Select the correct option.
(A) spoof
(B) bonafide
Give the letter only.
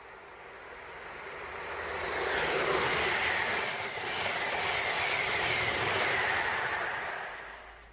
B